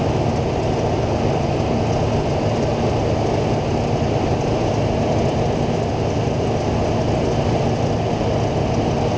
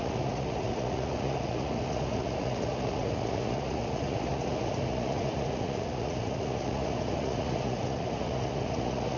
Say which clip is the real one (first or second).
first